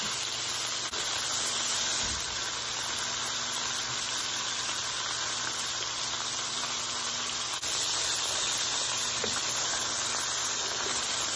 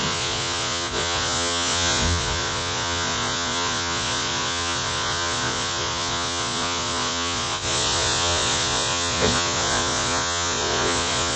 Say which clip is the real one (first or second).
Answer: first